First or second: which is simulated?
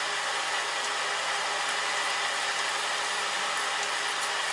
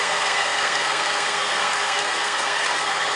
second